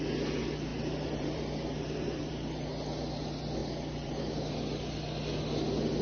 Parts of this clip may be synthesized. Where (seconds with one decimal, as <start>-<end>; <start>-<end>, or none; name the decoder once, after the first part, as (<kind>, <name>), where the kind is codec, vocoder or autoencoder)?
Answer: 0.7-2.5 (vocoder, BigVGAN v2); 3.6-4.1